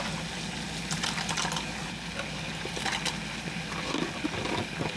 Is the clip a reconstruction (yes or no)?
no